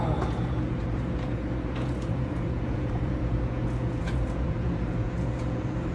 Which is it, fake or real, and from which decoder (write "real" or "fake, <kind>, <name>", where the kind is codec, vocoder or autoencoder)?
fake, vocoder, Vocos